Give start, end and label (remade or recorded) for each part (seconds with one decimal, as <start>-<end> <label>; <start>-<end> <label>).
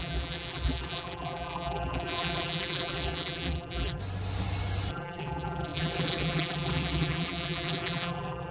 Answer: 0.0-4.0 remade; 4.0-4.9 recorded; 4.9-8.5 remade